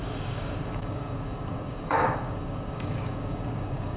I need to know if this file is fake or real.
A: fake